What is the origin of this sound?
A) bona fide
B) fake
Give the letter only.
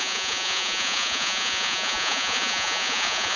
B